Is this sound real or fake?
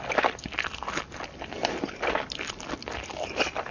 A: real